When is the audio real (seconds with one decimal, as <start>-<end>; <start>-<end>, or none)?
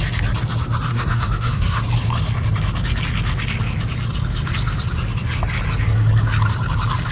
0.0-0.9; 1.8-7.1